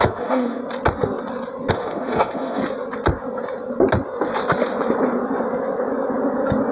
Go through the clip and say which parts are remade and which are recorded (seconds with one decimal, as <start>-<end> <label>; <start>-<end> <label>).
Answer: 0.0-0.6 remade; 0.6-1.7 recorded; 1.7-2.6 remade; 2.6-6.7 recorded